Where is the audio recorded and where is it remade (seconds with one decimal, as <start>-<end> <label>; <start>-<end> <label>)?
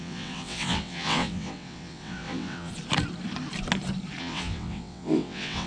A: 0.0-2.7 remade; 2.7-4.2 recorded; 4.2-5.7 remade